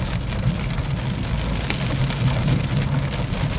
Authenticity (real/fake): real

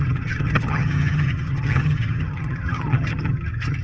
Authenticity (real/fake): fake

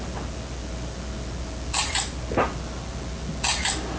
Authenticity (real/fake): real